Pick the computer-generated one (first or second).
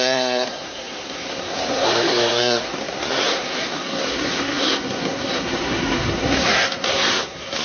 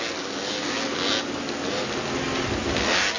first